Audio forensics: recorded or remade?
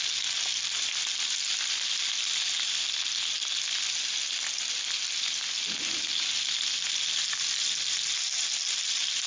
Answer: recorded